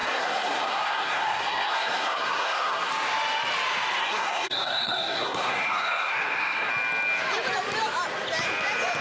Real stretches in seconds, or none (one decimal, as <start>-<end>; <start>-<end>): 2.9-4.0; 6.7-9.0